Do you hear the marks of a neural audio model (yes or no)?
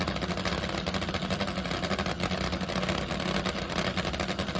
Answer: no